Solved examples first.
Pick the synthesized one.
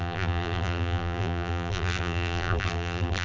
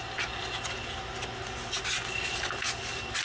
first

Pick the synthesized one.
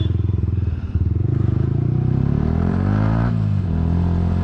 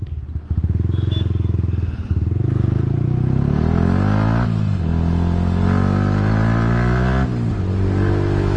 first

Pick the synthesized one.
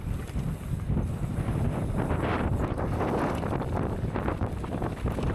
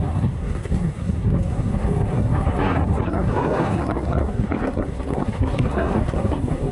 second